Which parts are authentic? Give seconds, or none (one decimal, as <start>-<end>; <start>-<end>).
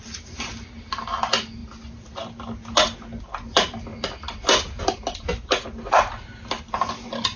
0.0-7.4